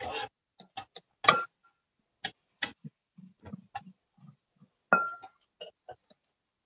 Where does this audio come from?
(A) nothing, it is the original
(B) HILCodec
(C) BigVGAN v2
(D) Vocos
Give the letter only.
A